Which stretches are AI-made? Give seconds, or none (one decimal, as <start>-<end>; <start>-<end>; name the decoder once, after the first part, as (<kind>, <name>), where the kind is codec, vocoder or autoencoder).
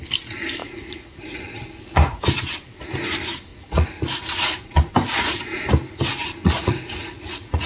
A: 0.6-2.2 (vocoder, Vocos); 3.5-4.9; 6.4-7.7